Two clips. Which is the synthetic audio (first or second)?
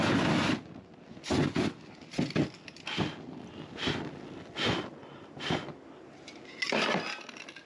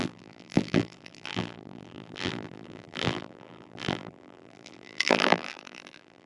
second